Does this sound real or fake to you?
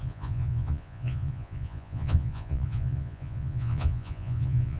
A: fake